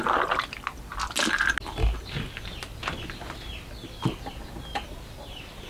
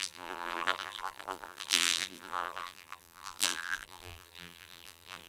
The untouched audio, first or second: first